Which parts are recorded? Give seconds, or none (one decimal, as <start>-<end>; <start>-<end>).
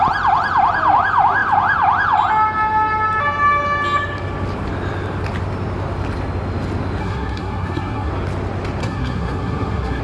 0.0-7.0; 8.1-8.8